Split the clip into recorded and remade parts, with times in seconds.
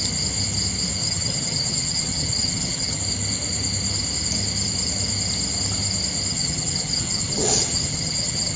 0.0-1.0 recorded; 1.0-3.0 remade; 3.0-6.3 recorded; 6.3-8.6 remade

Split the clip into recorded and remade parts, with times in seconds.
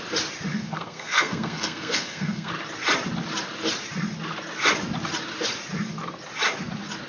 0.0-0.5 recorded; 0.5-2.5 remade; 2.5-7.1 recorded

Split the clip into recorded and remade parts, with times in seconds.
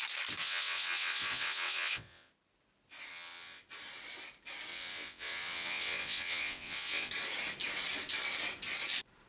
0.0-0.4 recorded; 0.4-2.3 remade; 2.3-3.1 recorded; 3.1-3.6 remade; 3.6-4.7 recorded; 4.7-7.1 remade; 7.1-9.3 recorded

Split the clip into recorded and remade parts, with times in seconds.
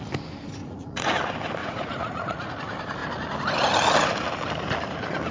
0.0-0.6 recorded; 0.6-1.1 remade; 1.1-1.6 recorded; 1.6-2.5 remade; 2.5-5.3 recorded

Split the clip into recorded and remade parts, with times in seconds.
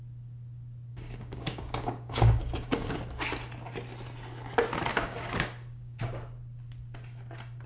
0.0-0.9 recorded; 0.9-3.0 remade; 3.0-4.9 recorded; 4.9-6.0 remade; 6.0-7.7 recorded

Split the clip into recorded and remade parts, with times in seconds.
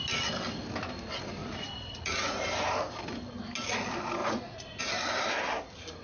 0.0-1.4 recorded; 1.4-2.4 remade; 2.4-4.2 recorded; 4.2-4.8 remade; 4.8-6.0 recorded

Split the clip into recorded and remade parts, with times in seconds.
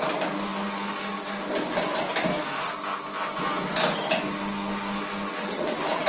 0.0-5.3 recorded; 5.3-6.1 remade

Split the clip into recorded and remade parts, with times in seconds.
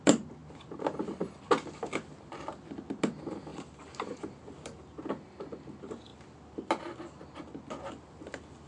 0.0-3.5 recorded; 3.5-4.2 remade; 4.2-8.7 recorded